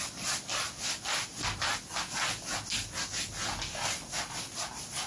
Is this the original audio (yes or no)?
yes